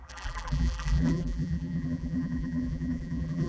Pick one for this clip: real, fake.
fake